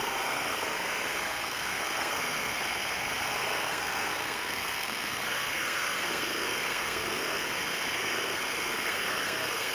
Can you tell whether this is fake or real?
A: fake